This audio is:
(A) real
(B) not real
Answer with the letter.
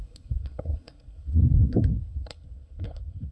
B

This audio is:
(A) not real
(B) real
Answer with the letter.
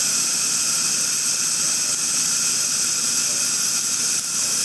B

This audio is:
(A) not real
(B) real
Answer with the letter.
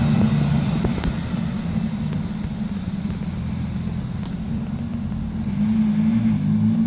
B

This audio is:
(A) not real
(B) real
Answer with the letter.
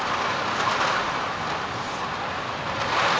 B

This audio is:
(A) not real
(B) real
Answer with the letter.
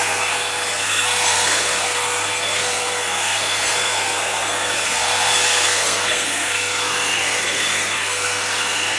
A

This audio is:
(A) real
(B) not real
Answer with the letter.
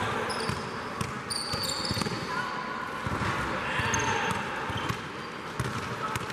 A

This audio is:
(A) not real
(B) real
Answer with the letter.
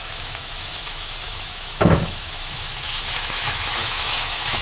A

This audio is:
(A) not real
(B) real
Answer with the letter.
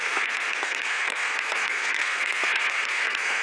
A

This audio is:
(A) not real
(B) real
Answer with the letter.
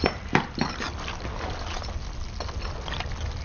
B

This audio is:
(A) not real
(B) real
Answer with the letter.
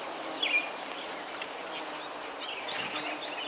B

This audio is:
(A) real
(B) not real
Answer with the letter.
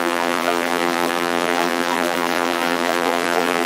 B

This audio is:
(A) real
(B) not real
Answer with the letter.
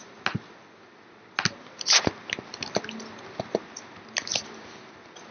A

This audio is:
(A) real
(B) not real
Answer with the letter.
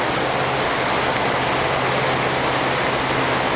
A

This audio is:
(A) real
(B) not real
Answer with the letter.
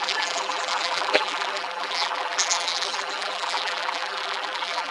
B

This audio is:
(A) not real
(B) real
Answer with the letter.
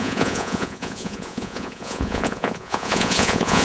A